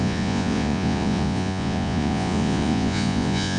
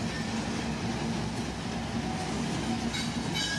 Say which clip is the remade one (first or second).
first